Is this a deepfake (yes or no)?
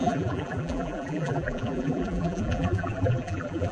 yes